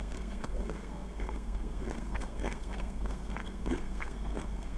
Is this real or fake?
fake